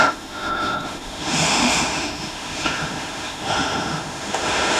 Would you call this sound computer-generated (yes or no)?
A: yes